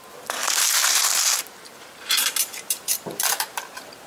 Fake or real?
fake